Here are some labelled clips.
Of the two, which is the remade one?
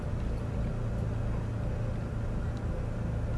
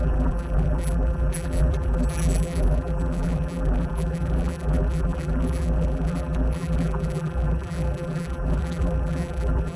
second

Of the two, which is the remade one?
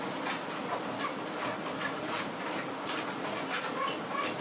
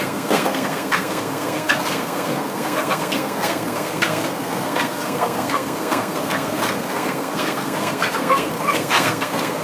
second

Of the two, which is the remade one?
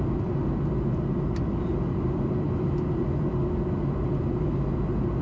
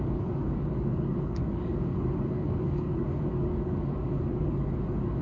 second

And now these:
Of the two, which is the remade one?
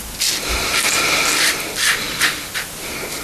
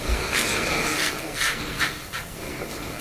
second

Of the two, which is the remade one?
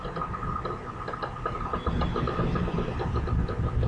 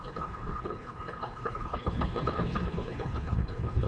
second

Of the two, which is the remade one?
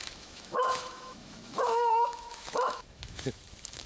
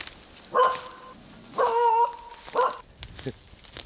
first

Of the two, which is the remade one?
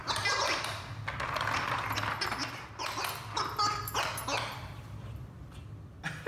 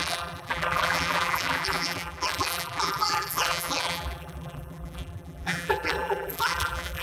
second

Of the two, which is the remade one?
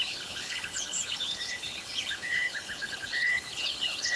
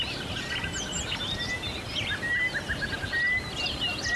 first